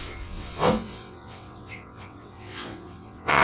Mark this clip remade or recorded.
remade